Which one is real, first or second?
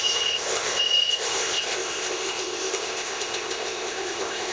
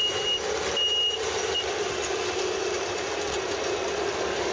second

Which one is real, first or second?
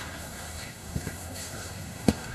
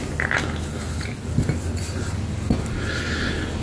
second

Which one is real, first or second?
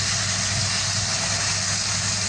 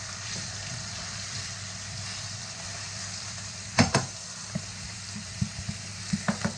first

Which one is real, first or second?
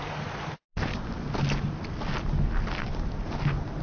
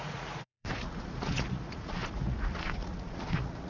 first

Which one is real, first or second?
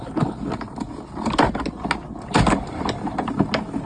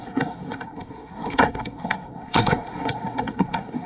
first